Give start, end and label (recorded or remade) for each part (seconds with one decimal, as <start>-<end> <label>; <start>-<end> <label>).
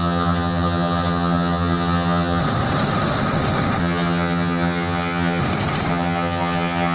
0.0-2.4 remade; 2.4-3.8 recorded; 3.8-5.4 remade; 5.4-5.9 recorded; 5.9-6.9 remade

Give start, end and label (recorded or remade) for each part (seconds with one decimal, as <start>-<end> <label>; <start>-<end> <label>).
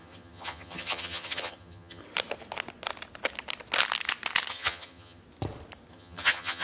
0.0-2.0 remade; 2.0-4.5 recorded; 4.5-5.2 remade; 5.2-5.9 recorded; 5.9-6.6 remade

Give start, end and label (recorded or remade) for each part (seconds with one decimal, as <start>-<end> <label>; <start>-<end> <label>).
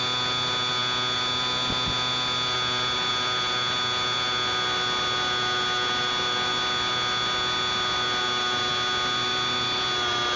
0.0-10.4 recorded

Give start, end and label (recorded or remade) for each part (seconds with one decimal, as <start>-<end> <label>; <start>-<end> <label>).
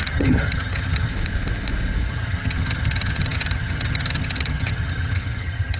0.0-1.1 remade; 1.1-2.1 recorded; 2.1-5.8 remade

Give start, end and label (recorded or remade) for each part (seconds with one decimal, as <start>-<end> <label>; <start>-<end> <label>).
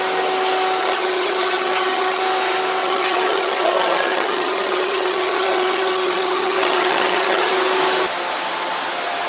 0.0-0.8 recorded; 0.8-2.2 remade; 2.2-2.8 recorded; 2.8-7.5 remade; 7.5-9.3 recorded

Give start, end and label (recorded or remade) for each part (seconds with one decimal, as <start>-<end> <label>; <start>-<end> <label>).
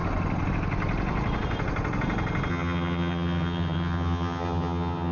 0.0-2.5 recorded; 2.5-5.1 remade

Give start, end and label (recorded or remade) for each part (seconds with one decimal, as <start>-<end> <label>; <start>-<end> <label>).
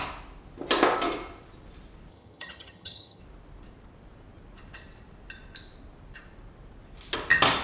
0.0-2.1 recorded; 2.1-3.2 remade; 3.2-7.6 recorded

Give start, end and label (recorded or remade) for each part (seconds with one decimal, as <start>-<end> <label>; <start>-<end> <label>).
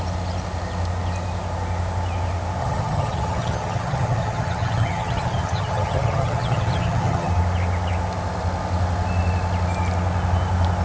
0.0-2.6 recorded; 2.6-7.3 remade; 7.3-10.8 recorded